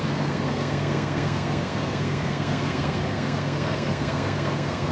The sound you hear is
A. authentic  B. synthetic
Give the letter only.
B